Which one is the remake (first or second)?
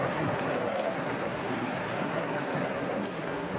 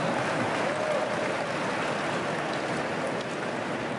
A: first